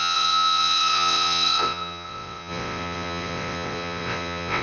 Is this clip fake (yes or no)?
yes